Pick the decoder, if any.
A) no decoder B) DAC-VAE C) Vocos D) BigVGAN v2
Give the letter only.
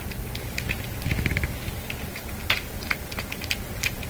A